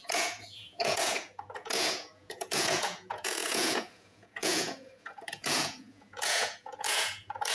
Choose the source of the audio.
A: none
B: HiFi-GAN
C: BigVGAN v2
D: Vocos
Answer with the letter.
D